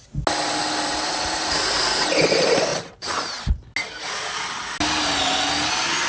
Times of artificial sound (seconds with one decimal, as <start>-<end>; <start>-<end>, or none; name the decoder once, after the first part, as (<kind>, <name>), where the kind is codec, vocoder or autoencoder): none